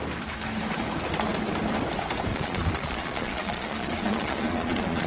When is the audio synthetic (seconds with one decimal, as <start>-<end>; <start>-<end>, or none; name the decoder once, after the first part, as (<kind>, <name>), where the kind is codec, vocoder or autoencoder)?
2.3-5.1 (vocoder, Vocos)